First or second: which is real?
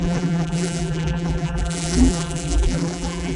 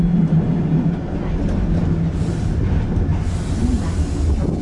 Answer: second